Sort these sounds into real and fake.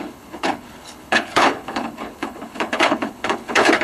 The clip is fake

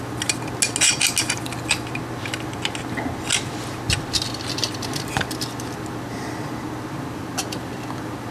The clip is real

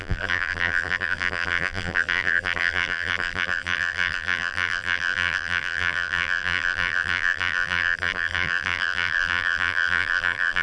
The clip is fake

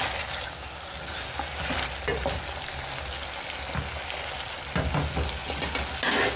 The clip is real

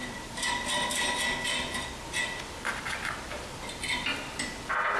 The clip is real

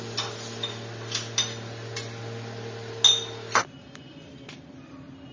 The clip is real